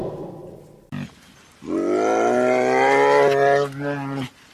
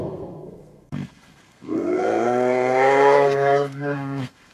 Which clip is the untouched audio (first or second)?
first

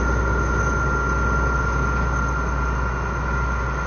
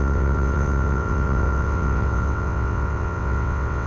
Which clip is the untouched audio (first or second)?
first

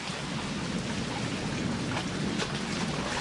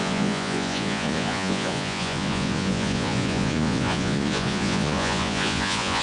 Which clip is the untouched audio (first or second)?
first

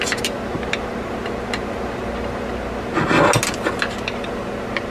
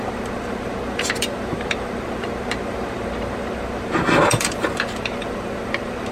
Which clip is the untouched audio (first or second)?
first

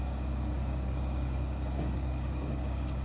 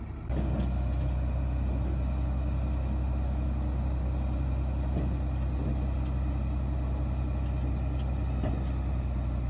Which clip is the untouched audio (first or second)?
second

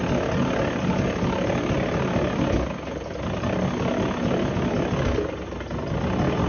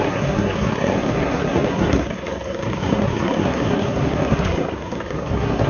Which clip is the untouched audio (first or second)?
first